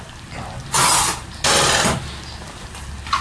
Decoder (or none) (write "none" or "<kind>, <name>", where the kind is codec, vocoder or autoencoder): vocoder, BigVGAN v2